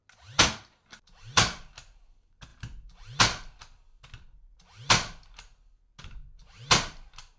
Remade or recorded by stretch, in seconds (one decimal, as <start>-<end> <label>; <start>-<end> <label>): 0.0-7.4 recorded